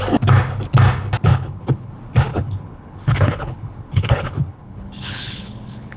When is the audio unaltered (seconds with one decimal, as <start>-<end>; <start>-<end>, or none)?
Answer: 0.0-1.3; 1.9-2.3